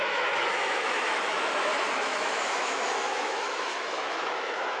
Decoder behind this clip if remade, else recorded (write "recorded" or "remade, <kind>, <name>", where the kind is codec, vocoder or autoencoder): remade, autoencoder, DAC-VAE